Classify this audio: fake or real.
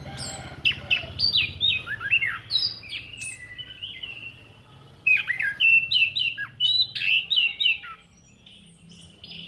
real